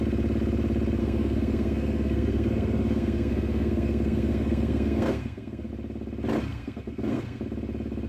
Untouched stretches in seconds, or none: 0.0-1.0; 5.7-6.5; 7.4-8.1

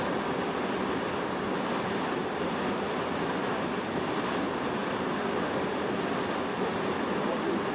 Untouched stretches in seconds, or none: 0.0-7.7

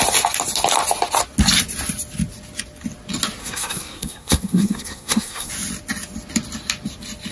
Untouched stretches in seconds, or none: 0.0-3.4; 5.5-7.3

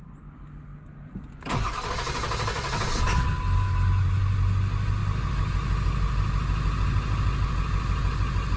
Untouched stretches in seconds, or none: 0.0-8.6